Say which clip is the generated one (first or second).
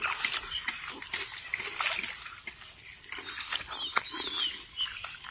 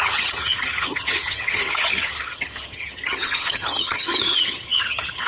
second